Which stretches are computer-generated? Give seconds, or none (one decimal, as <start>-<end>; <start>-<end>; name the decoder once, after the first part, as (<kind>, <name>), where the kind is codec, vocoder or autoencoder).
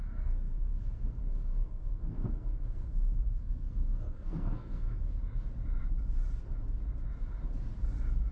0.0-5.0 (codec, SNAC)